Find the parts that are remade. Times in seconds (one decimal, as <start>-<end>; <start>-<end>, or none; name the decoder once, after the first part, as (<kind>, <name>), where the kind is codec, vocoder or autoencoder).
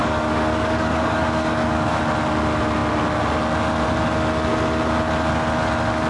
0.0-2.0 (codec, DAC)